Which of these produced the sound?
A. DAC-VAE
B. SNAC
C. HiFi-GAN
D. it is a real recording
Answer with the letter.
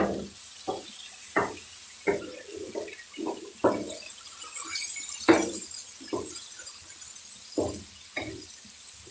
D